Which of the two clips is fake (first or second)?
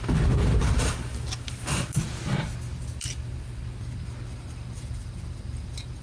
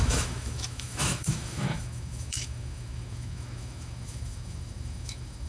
second